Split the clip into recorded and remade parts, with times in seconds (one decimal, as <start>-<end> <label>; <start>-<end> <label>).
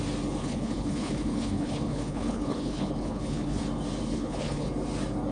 0.0-0.4 recorded; 0.4-3.6 remade; 3.6-4.1 recorded; 4.1-4.7 remade; 4.7-5.3 recorded